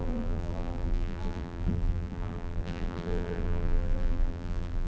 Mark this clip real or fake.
fake